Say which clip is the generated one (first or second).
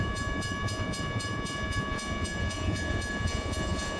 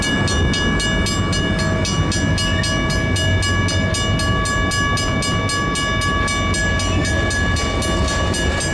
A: first